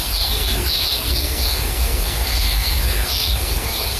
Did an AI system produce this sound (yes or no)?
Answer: yes